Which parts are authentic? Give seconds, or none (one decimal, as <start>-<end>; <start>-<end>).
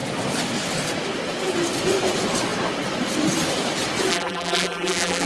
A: 0.0-4.1